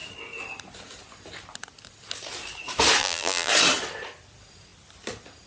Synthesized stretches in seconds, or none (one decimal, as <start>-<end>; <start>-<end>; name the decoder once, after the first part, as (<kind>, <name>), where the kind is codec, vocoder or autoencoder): 3.0-3.5 (vocoder, BigVGAN v2)